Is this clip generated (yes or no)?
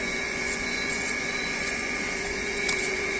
yes